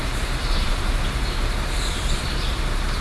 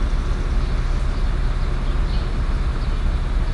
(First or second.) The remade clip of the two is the first